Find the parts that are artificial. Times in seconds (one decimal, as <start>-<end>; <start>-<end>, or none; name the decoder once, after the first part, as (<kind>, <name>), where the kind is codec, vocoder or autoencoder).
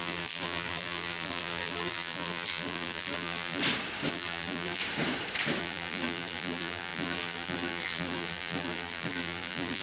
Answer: 0.0-3.6 (vocoder, BigVGAN v2); 4.1-4.8; 5.6-9.8